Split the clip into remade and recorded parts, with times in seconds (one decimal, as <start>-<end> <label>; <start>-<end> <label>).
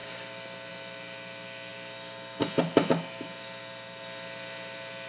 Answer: 0.0-0.7 remade; 0.7-1.7 recorded; 1.7-5.1 remade